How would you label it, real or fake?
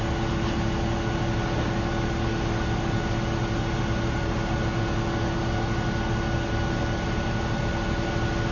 real